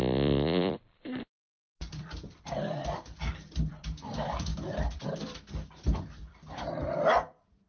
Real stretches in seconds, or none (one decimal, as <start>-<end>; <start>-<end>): none